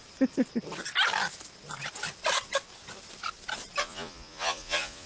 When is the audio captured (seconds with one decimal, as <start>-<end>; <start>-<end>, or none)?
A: 0.0-3.8

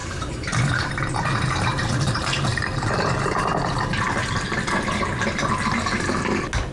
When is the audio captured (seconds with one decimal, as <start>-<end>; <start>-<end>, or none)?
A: 2.5-6.7